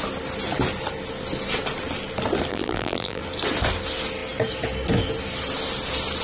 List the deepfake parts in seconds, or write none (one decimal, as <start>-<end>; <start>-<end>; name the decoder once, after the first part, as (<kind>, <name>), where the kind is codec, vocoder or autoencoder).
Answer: 2.5-3.2 (vocoder, BigVGAN v2)